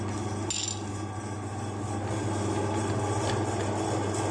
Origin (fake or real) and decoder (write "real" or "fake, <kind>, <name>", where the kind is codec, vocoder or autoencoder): real